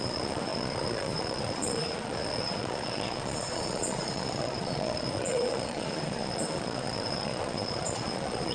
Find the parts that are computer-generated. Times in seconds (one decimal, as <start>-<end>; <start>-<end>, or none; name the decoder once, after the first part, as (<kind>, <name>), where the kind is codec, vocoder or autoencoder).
0.0-8.5 (vocoder, Vocos)